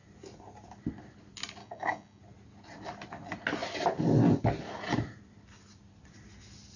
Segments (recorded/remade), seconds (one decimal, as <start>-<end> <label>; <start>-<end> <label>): 0.0-1.6 recorded; 1.6-2.2 remade; 2.2-6.8 recorded